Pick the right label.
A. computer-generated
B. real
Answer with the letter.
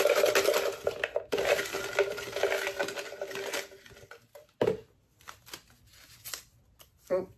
B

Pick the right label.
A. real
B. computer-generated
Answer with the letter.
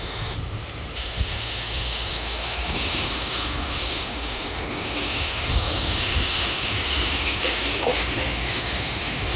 B